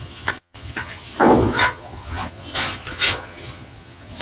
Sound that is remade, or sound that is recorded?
remade